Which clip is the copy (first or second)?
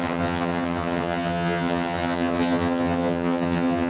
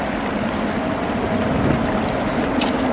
first